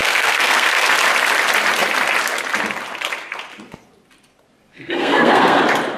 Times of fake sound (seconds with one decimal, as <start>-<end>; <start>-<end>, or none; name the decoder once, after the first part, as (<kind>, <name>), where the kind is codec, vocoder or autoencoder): 0.0-0.9 (codec, SNAC); 4.7-5.6